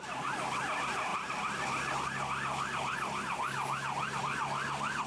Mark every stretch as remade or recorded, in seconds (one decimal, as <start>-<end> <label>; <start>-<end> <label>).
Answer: 0.0-5.1 recorded